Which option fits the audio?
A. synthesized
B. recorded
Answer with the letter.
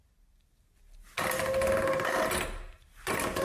B